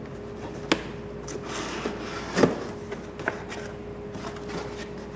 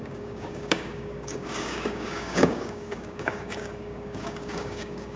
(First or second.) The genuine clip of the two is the first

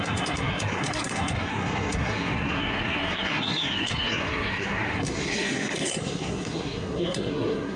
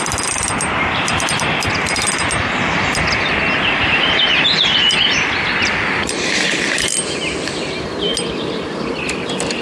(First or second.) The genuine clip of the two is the second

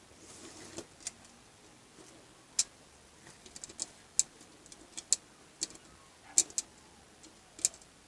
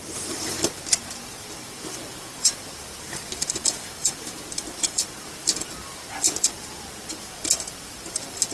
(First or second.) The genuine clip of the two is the first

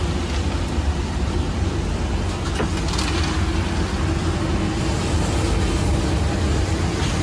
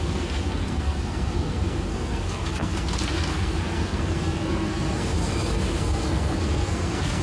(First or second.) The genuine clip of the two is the first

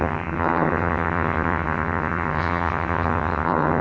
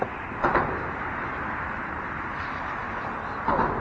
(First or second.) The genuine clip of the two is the second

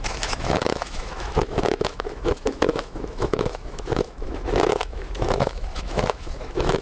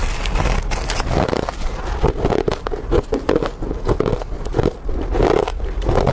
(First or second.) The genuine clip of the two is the second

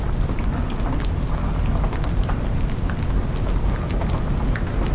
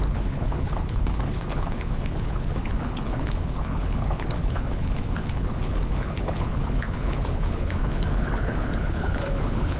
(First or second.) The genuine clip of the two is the first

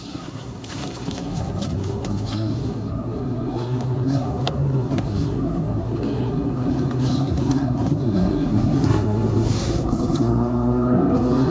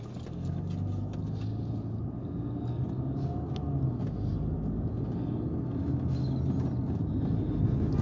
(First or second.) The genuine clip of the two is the second